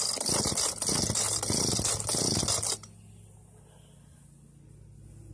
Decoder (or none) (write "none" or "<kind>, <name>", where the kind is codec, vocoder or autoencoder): none